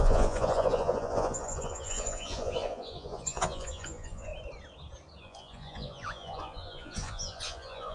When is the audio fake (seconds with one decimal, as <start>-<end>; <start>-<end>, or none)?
0.0-4.3; 5.2-7.9